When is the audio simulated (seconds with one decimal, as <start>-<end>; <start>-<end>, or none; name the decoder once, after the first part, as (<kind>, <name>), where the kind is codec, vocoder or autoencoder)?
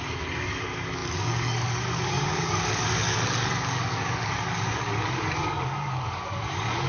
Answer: 0.0-6.9 (codec, DAC)